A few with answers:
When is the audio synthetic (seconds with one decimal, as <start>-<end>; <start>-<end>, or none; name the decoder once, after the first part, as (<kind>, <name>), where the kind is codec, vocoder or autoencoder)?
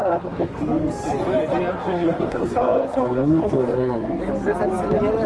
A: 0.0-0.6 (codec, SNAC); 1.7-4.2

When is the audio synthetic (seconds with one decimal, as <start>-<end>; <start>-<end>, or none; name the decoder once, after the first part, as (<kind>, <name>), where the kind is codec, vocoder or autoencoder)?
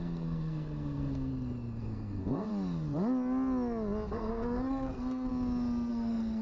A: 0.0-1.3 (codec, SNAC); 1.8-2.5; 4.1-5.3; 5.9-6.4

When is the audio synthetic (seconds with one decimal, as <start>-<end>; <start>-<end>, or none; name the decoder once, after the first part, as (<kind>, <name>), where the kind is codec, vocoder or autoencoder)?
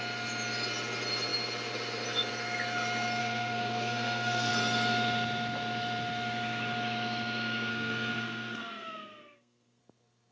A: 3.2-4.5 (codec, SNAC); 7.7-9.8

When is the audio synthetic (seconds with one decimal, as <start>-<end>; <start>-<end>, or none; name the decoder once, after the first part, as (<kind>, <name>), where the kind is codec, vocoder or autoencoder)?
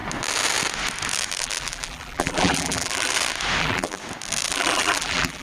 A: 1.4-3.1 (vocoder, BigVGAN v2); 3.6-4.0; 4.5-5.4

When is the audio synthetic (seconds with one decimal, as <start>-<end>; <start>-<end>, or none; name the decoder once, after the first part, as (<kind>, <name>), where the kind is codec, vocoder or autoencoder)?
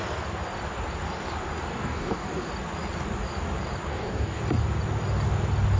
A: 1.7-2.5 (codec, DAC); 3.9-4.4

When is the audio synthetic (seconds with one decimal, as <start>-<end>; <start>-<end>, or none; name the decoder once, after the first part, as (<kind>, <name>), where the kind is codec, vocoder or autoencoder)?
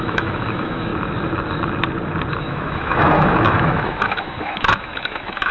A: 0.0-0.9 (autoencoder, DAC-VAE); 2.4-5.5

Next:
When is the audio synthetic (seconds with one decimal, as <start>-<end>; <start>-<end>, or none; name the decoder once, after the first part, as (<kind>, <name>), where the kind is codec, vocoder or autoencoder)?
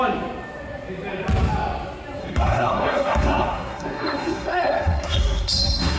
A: 2.2-6.0 (codec, SNAC)